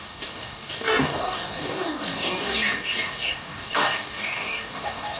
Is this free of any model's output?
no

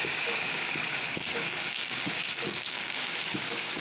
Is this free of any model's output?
no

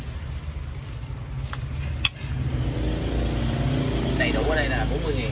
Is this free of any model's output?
yes